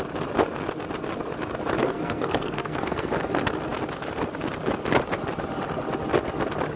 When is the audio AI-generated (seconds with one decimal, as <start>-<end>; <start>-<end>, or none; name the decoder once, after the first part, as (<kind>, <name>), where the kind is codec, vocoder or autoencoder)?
1.8-3.1 (codec, SNAC)

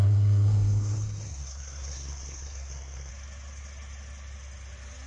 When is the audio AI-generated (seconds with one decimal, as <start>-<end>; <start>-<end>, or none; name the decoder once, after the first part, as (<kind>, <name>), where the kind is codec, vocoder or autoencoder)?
0.0-3.1 (codec, SNAC)

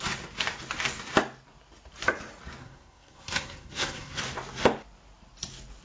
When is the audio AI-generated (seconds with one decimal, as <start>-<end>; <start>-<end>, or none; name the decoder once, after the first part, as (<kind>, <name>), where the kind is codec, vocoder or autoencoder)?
2.6-4.2 (codec, SNAC)

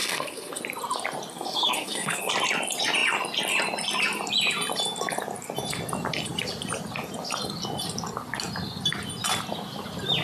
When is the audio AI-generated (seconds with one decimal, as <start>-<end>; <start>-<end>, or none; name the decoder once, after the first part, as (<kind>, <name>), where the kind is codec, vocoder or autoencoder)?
0.0-0.6 (codec, SNAC); 1.3-2.3